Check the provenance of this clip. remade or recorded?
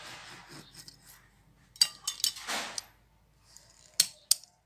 recorded